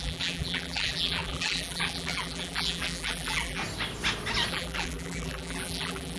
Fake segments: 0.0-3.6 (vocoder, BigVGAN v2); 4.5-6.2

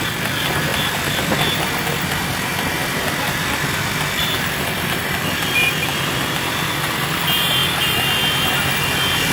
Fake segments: 0.7-1.2 (vocoder, BigVGAN v2); 2.8-6.9

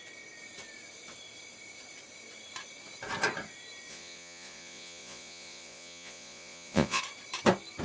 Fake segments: 3.9-7.0 (vocoder, Vocos)